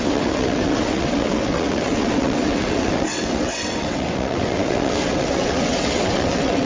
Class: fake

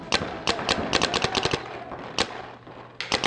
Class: real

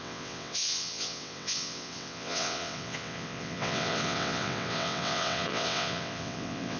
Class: fake